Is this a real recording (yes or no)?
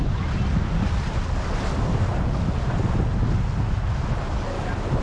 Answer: yes